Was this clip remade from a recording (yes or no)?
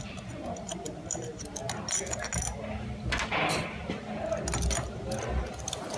no